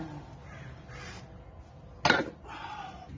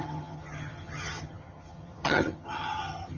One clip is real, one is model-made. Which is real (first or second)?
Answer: first